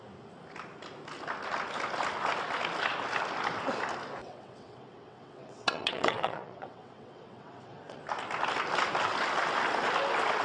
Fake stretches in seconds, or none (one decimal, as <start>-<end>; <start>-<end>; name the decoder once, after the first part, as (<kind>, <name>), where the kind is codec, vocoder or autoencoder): 4.2-8.0 (vocoder, WaveNeXt)